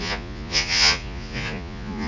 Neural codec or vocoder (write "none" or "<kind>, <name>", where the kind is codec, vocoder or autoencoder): vocoder, Vocos